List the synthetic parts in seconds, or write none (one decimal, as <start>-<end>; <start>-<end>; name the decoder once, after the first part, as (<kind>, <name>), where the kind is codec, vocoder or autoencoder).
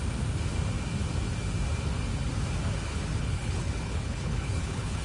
2.9-5.0 (codec, HILCodec)